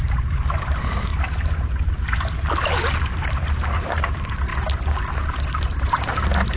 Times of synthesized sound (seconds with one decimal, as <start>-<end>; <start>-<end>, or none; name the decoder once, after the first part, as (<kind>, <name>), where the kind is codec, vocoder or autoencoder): 0.0-1.1 (vocoder, BigVGAN v2); 2.6-4.5; 5.6-6.6